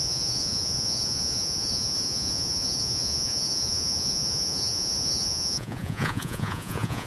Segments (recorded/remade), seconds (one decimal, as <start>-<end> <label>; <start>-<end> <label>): 0.0-7.1 remade